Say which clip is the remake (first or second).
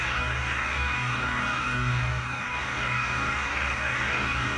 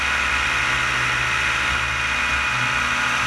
first